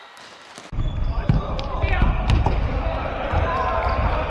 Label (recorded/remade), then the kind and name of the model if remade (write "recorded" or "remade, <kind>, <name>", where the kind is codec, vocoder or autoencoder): recorded